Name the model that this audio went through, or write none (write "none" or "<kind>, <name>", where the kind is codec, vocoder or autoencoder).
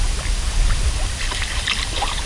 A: none